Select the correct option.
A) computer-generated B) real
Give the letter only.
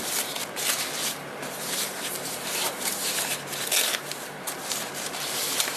A